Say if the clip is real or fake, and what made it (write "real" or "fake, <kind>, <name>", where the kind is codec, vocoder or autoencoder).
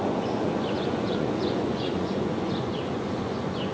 fake, vocoder, Vocos